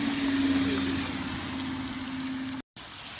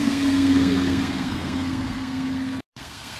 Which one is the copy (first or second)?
second